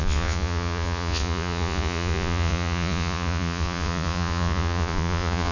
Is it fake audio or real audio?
fake